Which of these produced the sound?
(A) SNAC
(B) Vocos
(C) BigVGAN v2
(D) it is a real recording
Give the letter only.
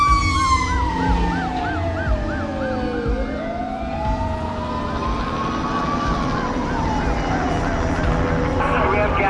D